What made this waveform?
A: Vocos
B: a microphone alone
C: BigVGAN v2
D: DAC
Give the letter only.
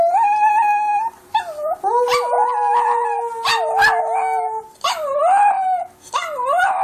B